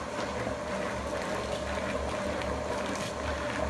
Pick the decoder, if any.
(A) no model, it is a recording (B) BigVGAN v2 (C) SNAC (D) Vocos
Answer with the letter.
A